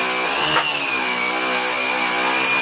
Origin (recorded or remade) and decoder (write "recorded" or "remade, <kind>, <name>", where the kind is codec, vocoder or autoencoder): recorded